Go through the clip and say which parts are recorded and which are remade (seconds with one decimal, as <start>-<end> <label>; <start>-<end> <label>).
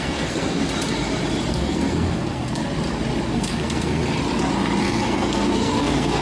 0.0-0.6 remade; 0.6-1.5 recorded; 1.5-2.6 remade; 2.6-3.3 recorded; 3.3-4.0 remade; 4.0-4.8 recorded; 4.8-6.2 remade